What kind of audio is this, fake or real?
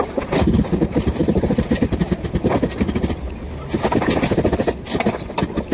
real